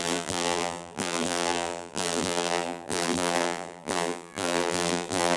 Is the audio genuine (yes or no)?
no